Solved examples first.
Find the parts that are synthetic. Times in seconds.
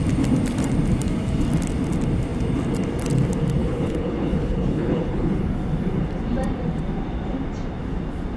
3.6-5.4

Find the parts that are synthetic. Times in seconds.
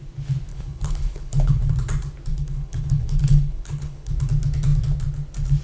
0.5-1.7; 2.3-4.1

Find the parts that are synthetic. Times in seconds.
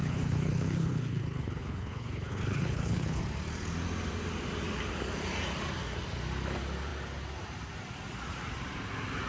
0.0-3.2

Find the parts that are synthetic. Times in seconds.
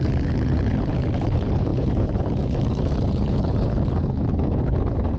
0.0-5.2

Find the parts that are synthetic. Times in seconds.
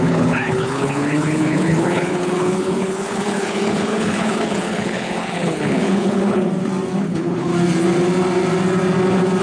0.0-6.5; 7.0-7.5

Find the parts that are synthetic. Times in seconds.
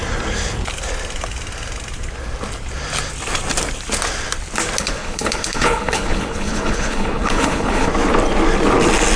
4.8-7.9